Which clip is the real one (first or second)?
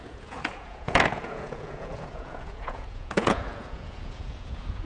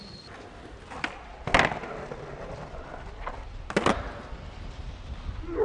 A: second